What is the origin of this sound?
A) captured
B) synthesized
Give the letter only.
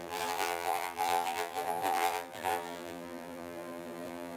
B